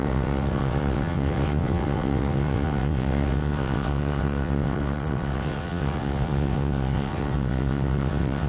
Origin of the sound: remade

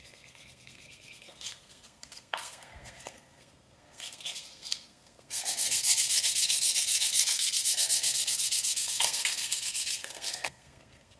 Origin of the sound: remade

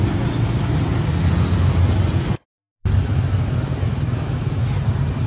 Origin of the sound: recorded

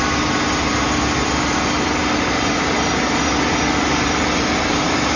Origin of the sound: recorded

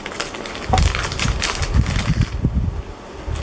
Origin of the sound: recorded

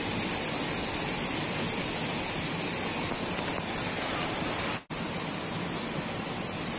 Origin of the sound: recorded